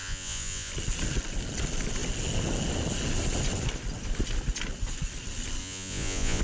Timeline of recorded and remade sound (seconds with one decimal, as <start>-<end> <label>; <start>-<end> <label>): 0.0-0.7 remade; 0.7-5.6 recorded; 5.6-6.4 remade

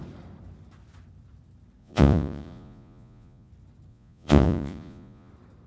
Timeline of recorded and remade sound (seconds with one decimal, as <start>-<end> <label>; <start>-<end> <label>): 0.0-1.8 recorded; 1.8-3.5 remade; 3.5-3.9 recorded; 3.9-5.3 remade; 5.3-5.7 recorded

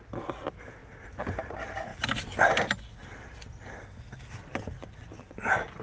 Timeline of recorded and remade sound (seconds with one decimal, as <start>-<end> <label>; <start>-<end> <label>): 0.0-5.8 recorded